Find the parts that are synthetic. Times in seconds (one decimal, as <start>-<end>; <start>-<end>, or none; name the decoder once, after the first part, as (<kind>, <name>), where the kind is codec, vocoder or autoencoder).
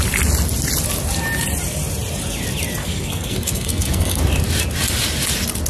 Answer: 2.8-4.2 (codec, SNAC)